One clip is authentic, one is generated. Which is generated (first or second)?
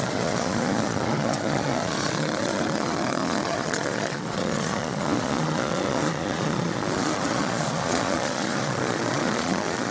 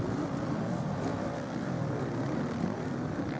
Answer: first